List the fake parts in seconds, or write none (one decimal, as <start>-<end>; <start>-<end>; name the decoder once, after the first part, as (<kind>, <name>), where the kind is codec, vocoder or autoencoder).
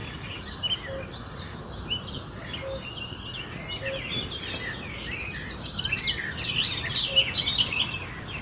none